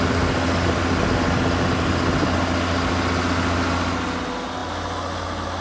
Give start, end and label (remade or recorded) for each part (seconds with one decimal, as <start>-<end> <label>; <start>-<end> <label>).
0.0-5.6 recorded